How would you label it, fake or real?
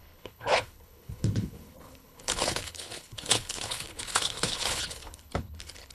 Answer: fake